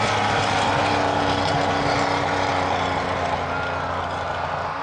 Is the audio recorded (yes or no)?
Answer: yes